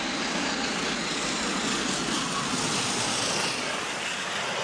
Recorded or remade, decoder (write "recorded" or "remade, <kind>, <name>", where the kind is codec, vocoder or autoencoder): recorded